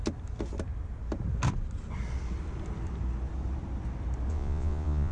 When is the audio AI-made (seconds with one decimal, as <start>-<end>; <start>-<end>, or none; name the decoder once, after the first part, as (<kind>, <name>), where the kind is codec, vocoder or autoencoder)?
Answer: 4.3-5.1 (vocoder, Vocos)